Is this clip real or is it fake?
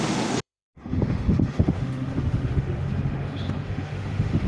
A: fake